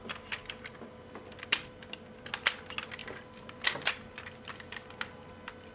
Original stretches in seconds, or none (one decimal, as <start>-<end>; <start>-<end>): 0.0-5.7